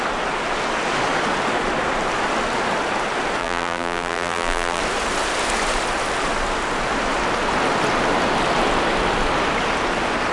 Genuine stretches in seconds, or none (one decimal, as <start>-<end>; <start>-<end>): 0.0-3.4; 4.8-10.3